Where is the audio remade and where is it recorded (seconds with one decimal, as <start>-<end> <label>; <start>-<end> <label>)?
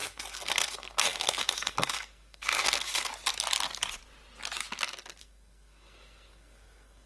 0.0-3.1 remade; 3.1-5.2 recorded; 5.2-7.1 remade